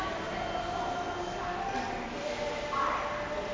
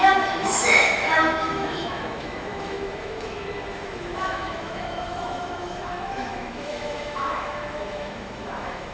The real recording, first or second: first